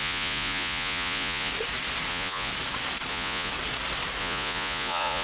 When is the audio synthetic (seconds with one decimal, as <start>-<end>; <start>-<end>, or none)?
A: 0.0-1.5; 2.1-2.5; 3.1-3.5; 4.2-5.2